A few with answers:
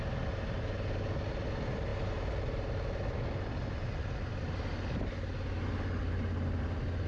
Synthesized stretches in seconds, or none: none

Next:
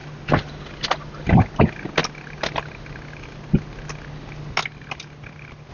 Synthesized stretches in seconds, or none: none